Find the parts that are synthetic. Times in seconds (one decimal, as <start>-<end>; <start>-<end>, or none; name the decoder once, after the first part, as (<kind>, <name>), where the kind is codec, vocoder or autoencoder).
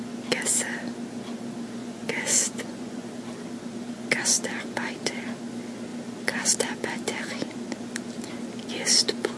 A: 1.8-3.1 (vocoder, Vocos)